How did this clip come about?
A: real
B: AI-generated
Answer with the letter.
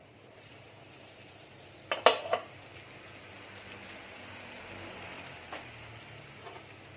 A